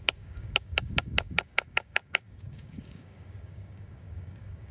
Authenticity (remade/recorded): remade